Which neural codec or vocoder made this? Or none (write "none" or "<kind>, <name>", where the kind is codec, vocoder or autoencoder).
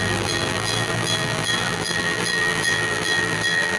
vocoder, BigVGAN v2